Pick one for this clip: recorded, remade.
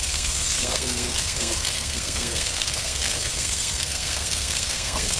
remade